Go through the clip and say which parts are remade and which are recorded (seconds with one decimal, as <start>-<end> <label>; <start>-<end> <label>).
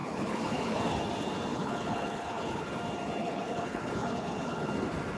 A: 0.0-0.8 remade; 0.8-1.5 recorded; 1.5-2.7 remade; 2.7-3.2 recorded; 3.2-4.7 remade; 4.7-5.2 recorded